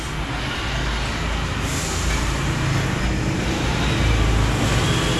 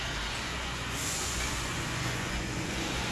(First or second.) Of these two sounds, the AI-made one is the second